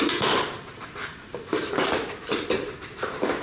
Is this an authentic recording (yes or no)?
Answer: no